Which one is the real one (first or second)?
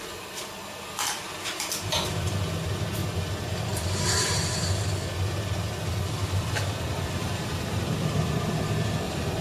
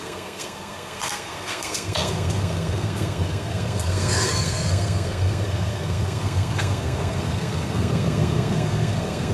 first